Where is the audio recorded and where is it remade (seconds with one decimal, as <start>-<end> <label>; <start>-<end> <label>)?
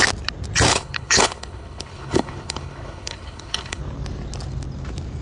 0.0-0.7 recorded; 0.7-3.8 remade; 3.8-5.2 recorded